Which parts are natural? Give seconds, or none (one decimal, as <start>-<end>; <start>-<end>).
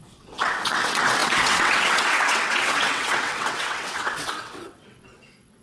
none